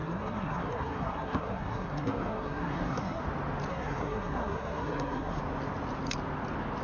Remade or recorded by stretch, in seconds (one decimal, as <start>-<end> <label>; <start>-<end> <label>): 0.0-3.2 remade; 3.2-3.7 recorded; 3.7-5.4 remade; 5.4-6.8 recorded